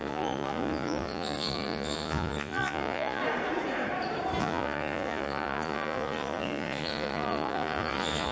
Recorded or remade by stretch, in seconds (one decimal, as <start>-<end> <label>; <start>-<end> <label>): 0.0-3.2 remade; 3.2-4.4 recorded; 4.4-8.3 remade